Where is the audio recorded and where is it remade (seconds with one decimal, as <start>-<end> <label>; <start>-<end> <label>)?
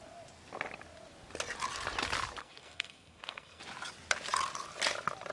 0.0-2.4 recorded; 2.4-3.6 remade; 3.6-5.3 recorded